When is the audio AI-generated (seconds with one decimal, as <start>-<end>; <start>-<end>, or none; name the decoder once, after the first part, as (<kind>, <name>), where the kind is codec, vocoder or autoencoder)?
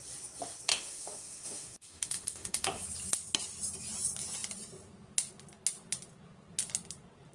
0.7-2.8 (autoencoder, DAC-VAE)